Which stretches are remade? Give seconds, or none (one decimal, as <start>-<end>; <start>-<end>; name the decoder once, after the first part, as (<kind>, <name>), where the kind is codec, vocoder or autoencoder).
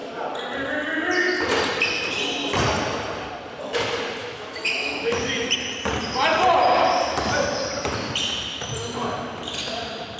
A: 4.2-5.5 (autoencoder, DAC-VAE)